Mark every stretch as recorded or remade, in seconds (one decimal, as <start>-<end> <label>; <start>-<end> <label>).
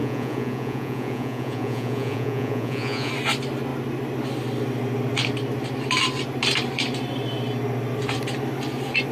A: 0.0-3.1 remade; 3.1-9.1 recorded